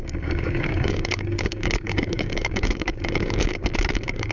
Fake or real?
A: fake